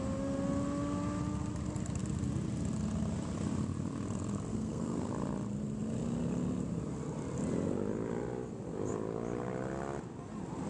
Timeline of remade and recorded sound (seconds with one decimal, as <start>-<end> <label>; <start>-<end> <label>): 0.0-4.5 recorded; 4.5-5.1 remade; 5.1-10.7 recorded